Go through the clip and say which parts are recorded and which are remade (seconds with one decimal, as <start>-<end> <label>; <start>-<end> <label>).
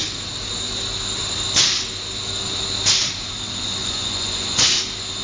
0.0-3.8 recorded; 3.8-4.8 remade; 4.8-5.2 recorded